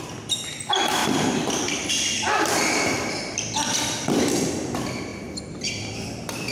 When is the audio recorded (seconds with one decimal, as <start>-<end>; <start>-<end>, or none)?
none